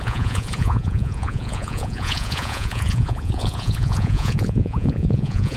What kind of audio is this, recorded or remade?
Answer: remade